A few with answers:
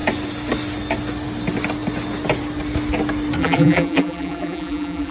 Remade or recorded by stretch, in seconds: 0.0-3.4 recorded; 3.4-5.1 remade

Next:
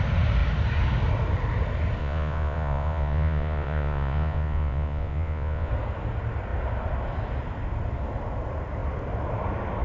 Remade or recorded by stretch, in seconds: 0.0-2.0 recorded; 2.0-5.7 remade; 5.7-9.8 recorded

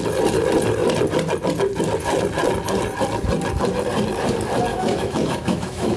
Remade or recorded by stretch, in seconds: 0.0-4.7 recorded; 4.7-6.0 remade

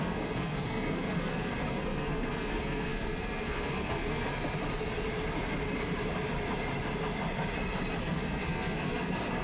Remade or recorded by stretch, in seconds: 0.0-4.3 remade; 4.3-8.0 recorded; 8.0-9.4 remade

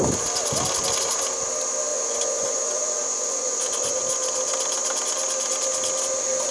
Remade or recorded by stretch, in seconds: 0.0-1.9 recorded; 1.9-4.0 remade; 4.0-6.5 recorded